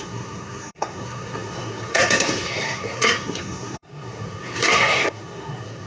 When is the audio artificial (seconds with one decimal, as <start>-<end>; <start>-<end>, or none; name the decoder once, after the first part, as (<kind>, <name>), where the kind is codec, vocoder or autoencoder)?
0.0-5.9 (codec, SNAC)